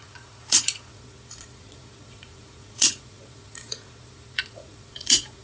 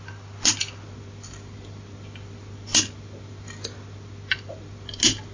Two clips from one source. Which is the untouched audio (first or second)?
second